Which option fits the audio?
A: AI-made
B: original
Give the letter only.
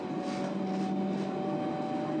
B